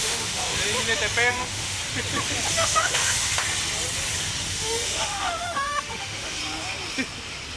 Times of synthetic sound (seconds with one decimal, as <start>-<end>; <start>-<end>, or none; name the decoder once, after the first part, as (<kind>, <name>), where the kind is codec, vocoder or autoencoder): 0.0-0.6 (autoencoder, DAC-VAE); 1.3-1.8; 2.5-3.4; 4.4-6.4